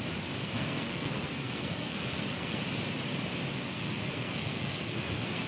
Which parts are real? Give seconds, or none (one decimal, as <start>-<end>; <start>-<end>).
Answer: 0.0-0.4; 2.6-3.5